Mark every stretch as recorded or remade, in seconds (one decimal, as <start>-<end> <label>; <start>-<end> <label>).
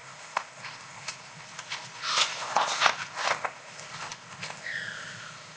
0.0-5.6 remade